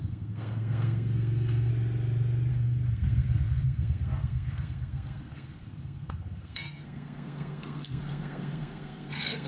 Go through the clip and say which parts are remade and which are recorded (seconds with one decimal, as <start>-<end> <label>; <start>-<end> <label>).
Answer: 0.0-1.7 remade; 1.7-2.5 recorded; 2.5-9.5 remade